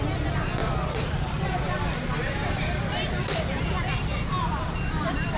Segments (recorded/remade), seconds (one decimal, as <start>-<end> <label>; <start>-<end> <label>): 0.0-0.6 recorded; 0.6-1.1 remade; 1.1-2.2 recorded; 2.2-5.4 remade

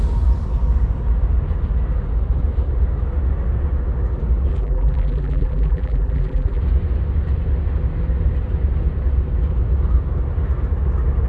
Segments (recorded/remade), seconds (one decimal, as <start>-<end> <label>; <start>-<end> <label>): 0.0-4.5 recorded; 4.5-6.6 remade; 6.6-11.3 recorded

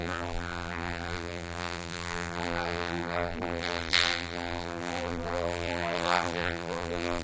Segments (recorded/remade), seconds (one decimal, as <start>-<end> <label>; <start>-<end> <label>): 0.0-7.2 remade

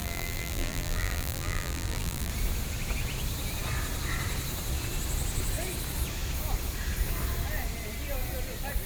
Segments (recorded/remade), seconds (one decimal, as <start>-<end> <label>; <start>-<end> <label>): 0.0-2.3 remade; 2.3-8.9 recorded

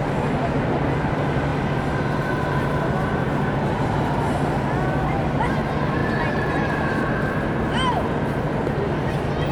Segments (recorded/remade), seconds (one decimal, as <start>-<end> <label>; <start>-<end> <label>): 0.0-9.5 recorded

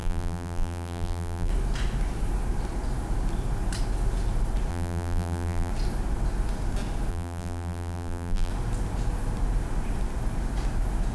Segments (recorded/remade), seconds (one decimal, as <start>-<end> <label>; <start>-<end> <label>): 0.0-1.5 remade; 1.5-4.7 recorded; 4.7-5.7 remade; 5.7-7.1 recorded; 7.1-8.5 remade; 8.5-11.1 recorded

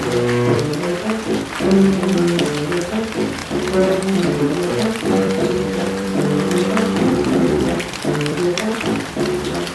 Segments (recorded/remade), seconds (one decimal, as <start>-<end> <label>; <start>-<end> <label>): 0.0-0.9 remade; 0.9-2.8 recorded; 2.8-3.4 remade; 3.4-4.4 recorded; 4.4-6.1 remade; 6.1-7.5 recorded; 7.5-9.7 remade